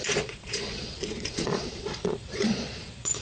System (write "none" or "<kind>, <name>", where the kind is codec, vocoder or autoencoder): vocoder, Vocos